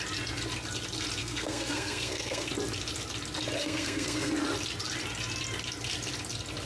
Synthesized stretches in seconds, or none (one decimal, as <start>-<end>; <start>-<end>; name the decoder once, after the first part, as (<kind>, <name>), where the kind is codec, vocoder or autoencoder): 1.2-2.5 (codec, SNAC); 3.6-4.3